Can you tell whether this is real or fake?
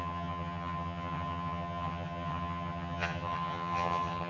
fake